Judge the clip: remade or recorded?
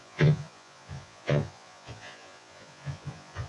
remade